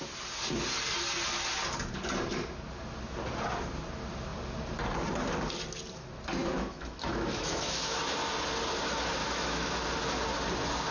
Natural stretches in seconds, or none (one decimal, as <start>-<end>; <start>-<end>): 0.0-6.4; 8.0-9.2; 9.7-10.9